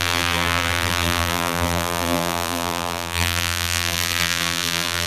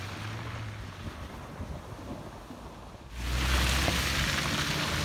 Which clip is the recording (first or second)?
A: second